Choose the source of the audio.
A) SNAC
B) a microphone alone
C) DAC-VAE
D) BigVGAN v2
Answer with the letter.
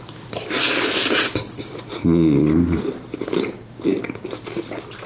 D